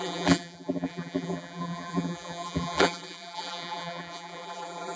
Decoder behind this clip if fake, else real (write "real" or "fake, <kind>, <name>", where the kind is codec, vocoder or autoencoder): fake, vocoder, BigVGAN v2